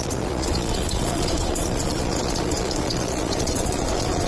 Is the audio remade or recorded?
remade